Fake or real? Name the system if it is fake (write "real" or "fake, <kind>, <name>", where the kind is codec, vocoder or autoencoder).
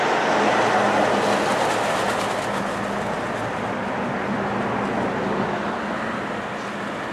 real